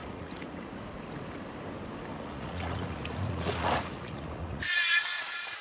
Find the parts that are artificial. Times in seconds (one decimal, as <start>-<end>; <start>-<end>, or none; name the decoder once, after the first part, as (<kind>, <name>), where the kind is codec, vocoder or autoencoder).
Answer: 0.0-0.6 (vocoder, Vocos); 2.1-5.6